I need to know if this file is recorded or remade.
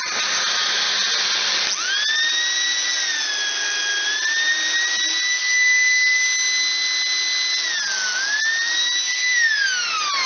recorded